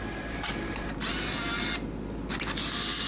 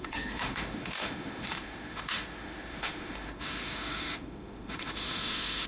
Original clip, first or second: first